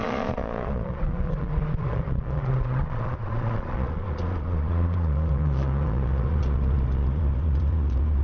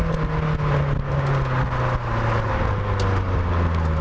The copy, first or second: first